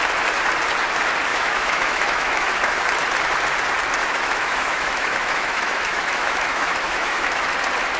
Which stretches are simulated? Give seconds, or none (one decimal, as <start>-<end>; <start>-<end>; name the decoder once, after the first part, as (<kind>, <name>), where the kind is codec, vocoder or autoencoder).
1.3-2.8 (autoencoder, DAC-VAE); 4.0-7.4